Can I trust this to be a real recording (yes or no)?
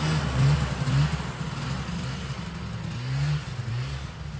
yes